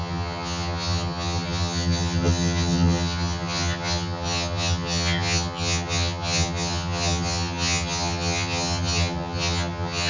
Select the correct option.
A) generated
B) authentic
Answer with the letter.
A